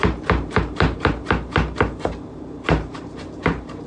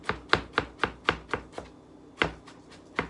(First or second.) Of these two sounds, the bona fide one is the second